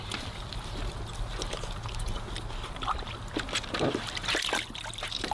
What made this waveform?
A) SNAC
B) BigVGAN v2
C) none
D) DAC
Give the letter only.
C